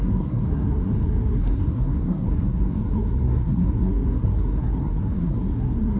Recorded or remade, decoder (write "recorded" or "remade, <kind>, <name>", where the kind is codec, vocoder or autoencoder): remade, codec, SNAC